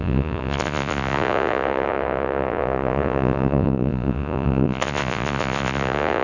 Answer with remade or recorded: remade